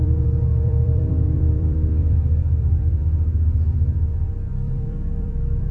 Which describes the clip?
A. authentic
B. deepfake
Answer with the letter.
B